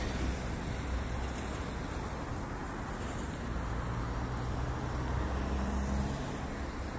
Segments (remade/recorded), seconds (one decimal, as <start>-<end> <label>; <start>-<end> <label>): 0.0-7.0 recorded